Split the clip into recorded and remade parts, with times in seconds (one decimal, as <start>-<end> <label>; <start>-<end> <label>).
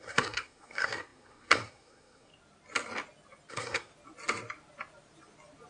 0.0-2.3 remade; 2.3-3.5 recorded; 3.5-3.9 remade; 3.9-5.7 recorded